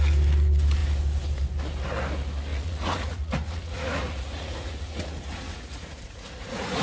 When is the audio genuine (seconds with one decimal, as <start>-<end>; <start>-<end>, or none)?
0.0-2.5